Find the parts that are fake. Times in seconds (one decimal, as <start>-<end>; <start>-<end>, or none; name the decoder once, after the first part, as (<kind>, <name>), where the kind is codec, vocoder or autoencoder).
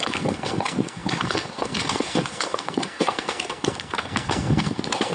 0.0-5.1 (codec, SNAC)